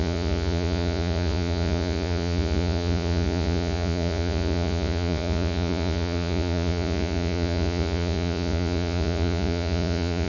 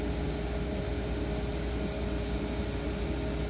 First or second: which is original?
second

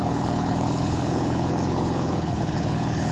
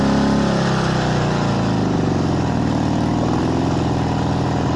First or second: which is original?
second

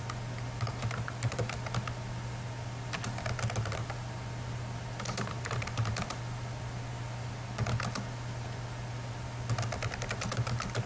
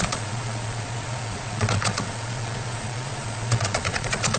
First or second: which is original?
first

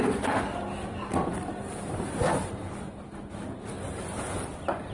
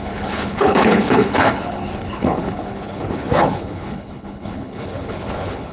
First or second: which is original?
first